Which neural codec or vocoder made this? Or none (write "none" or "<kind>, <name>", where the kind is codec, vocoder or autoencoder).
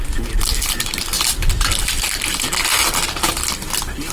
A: none